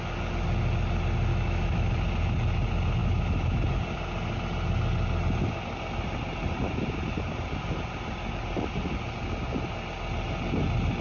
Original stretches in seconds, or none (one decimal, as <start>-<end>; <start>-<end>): 0.0-1.3; 1.9-3.0; 3.6-11.0